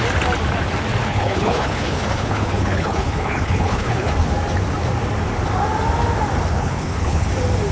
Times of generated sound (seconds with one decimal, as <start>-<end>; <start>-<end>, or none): 1.0-4.1; 6.5-7.3